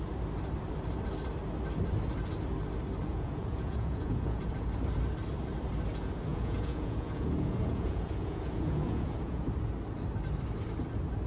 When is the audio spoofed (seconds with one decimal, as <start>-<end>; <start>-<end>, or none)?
3.1-4.5; 6.3-9.5